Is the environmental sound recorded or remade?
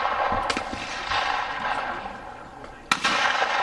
recorded